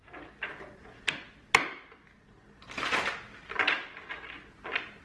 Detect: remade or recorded recorded